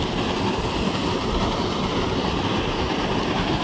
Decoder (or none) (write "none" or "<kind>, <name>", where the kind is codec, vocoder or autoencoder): none